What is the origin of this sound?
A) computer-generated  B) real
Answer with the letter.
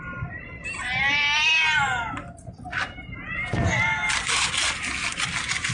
B